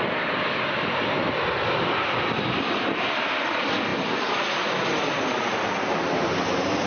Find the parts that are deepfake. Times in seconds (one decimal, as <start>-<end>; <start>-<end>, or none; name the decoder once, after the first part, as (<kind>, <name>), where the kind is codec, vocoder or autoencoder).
none